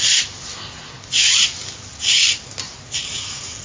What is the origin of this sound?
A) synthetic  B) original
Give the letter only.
B